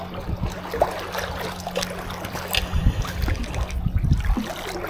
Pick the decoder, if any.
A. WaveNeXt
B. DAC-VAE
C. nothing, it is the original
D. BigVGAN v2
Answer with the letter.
C